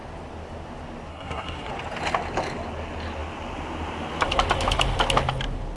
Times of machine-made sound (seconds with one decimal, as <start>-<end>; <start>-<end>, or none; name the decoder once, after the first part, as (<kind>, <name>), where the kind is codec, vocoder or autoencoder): 1.1-1.7 (codec, SNAC)